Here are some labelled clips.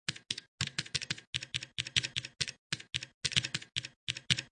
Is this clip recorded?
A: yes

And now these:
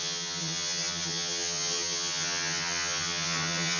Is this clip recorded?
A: no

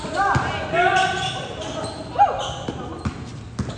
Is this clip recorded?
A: yes